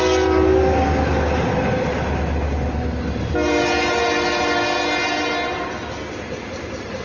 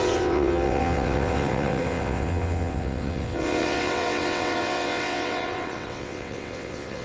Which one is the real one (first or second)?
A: first